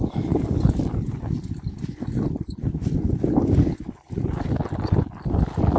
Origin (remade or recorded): recorded